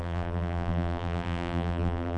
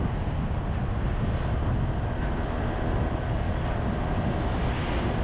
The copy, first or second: first